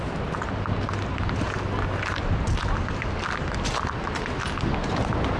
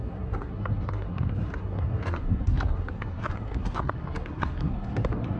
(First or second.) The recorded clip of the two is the first